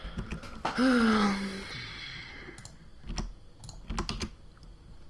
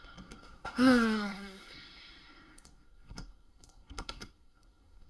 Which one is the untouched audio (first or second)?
first